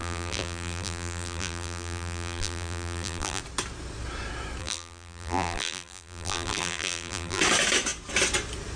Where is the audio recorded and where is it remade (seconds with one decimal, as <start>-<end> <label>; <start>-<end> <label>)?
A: 0.0-3.4 remade; 3.4-4.6 recorded; 4.6-7.4 remade; 7.4-8.8 recorded